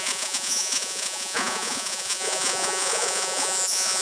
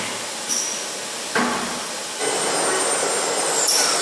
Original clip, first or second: second